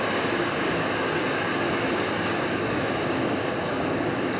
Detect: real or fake fake